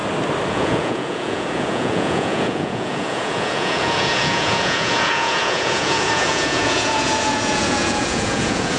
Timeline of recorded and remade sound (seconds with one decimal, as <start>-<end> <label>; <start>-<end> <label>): 0.0-0.5 recorded; 0.5-8.8 remade